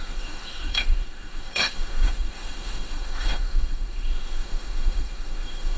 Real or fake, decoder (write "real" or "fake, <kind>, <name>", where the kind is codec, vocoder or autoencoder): fake, autoencoder, DAC-VAE